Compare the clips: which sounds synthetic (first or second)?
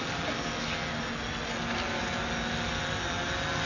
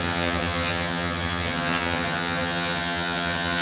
second